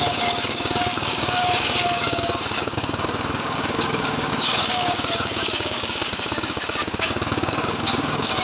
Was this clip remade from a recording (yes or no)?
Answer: yes